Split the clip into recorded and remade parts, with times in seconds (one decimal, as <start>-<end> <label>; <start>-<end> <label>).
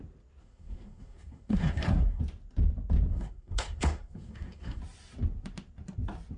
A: 0.0-0.4 recorded; 0.4-2.2 remade; 2.2-3.1 recorded; 3.1-4.8 remade; 4.8-6.4 recorded